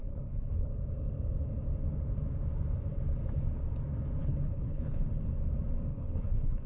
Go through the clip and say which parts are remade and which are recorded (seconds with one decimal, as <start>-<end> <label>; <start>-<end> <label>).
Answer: 0.0-0.7 remade; 0.7-4.2 recorded; 4.2-5.0 remade; 5.0-5.9 recorded; 5.9-6.7 remade